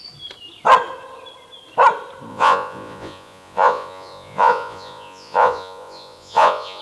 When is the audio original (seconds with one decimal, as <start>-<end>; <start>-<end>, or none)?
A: 0.0-2.3